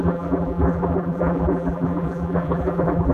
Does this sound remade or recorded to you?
remade